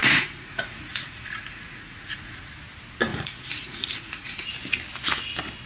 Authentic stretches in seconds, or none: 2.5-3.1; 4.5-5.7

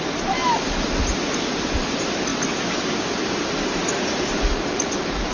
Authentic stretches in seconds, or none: 0.0-5.3

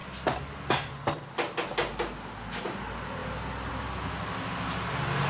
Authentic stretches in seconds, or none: 0.0-5.3

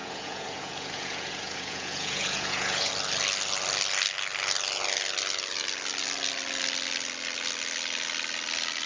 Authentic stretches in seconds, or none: 2.9-8.9